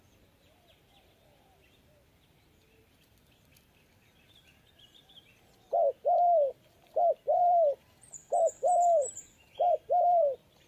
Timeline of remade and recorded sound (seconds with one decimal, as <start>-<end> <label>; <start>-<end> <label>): 0.0-3.5 remade; 3.5-6.0 recorded; 6.0-10.7 remade